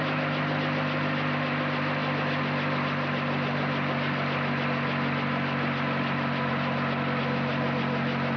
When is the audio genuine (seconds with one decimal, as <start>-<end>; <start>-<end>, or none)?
0.0-8.4